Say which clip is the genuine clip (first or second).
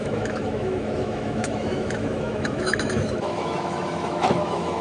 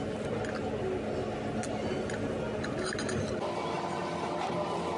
second